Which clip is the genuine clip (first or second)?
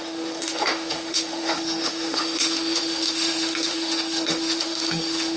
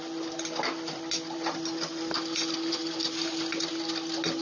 second